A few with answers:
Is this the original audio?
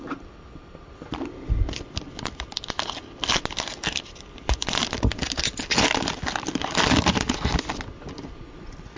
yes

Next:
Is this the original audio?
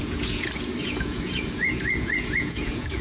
no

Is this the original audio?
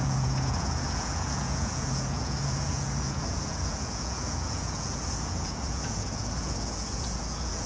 no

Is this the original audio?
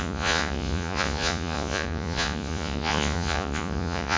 no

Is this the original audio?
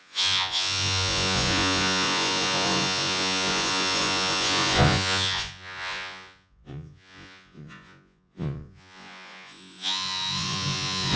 no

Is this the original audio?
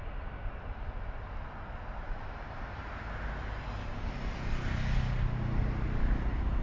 yes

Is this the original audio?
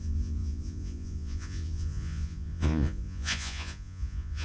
no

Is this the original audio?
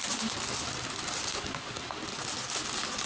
yes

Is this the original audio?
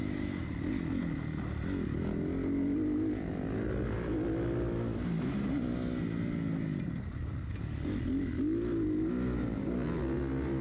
yes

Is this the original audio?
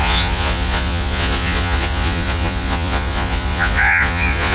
no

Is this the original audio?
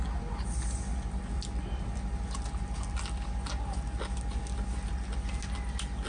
yes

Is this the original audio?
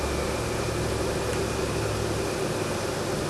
yes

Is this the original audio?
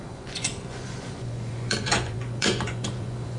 no